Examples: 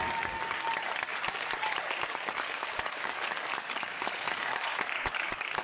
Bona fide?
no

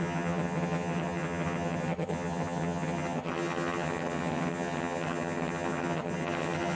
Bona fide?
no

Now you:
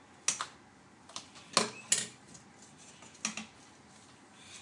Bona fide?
yes